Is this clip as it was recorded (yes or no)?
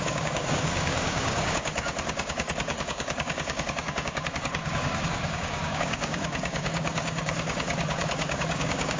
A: no